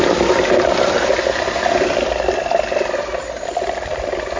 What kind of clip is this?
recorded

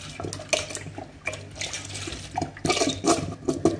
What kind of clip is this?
recorded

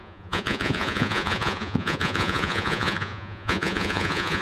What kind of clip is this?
remade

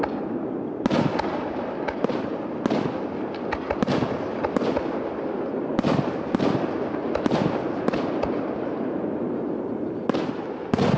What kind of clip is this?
recorded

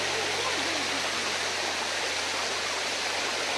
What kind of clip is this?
recorded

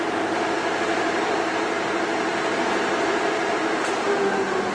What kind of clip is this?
recorded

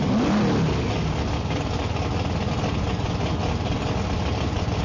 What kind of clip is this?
recorded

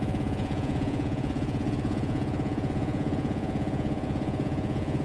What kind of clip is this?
remade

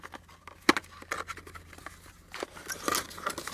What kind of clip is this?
recorded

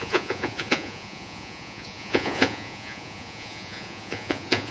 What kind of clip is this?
remade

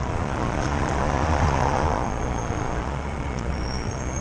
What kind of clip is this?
remade